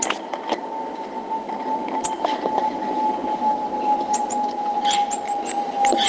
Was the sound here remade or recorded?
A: recorded